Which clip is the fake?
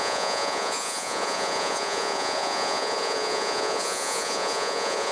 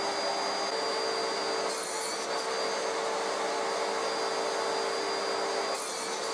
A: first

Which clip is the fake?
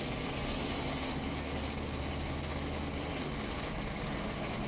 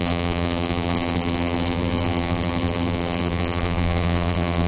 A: second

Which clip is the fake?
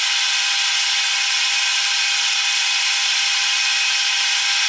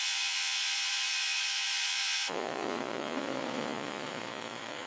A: second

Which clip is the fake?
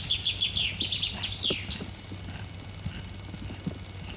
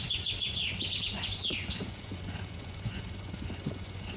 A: second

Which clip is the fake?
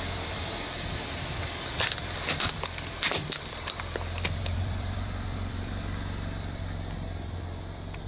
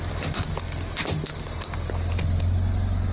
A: first